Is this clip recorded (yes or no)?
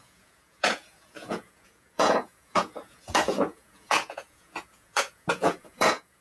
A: no